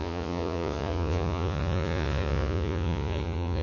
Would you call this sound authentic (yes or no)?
no